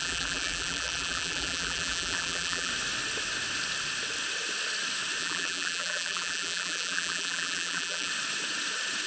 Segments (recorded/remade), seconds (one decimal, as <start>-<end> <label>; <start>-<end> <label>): 0.0-2.7 remade; 2.7-5.2 recorded; 5.2-8.1 remade; 8.1-9.1 recorded